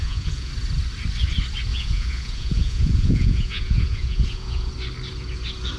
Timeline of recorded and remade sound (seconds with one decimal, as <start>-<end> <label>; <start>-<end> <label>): 0.0-0.5 remade; 0.5-1.7 recorded; 1.7-4.7 remade; 4.7-5.8 recorded